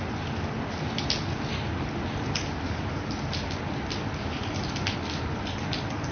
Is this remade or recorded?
recorded